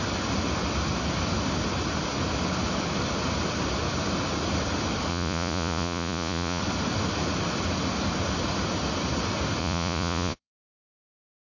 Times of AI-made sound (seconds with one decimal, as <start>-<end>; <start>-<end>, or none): 5.1-6.6; 9.6-11.2